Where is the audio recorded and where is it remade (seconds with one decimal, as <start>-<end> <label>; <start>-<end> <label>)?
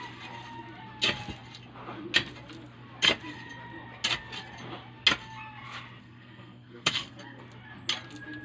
0.0-6.0 recorded; 6.0-7.4 remade; 7.4-8.4 recorded